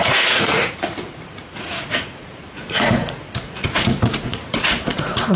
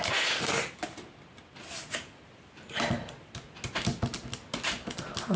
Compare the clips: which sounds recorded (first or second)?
second